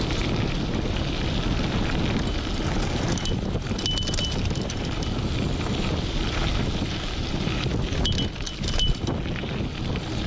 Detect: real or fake real